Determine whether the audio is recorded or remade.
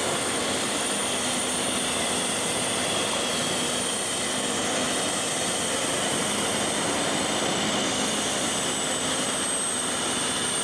recorded